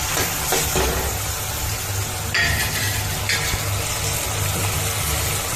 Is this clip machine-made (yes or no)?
no